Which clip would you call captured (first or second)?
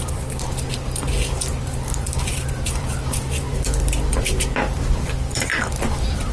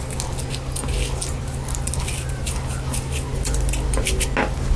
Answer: second